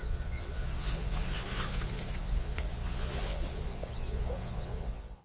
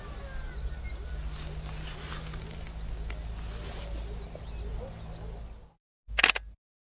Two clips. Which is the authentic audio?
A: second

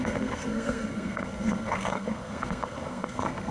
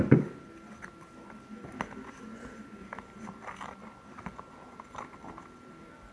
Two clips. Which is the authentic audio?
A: second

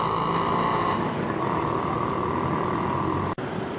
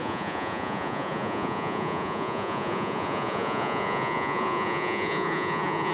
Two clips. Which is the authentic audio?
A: first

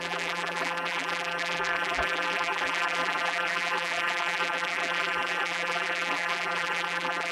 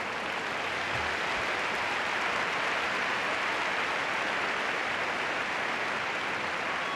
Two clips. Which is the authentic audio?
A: second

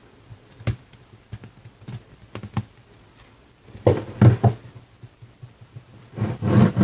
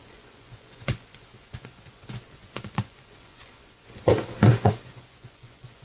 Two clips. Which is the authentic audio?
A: first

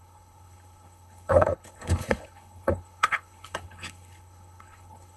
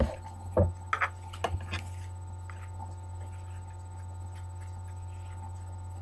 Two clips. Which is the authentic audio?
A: second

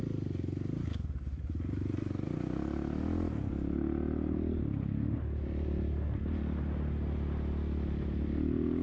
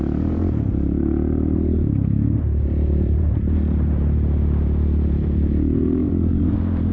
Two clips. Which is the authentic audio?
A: first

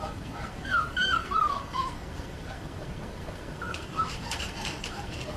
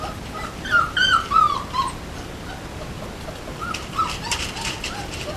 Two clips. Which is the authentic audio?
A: second